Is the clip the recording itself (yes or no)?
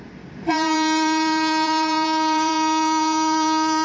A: no